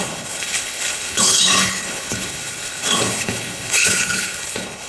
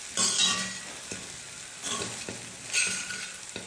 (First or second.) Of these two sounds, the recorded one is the second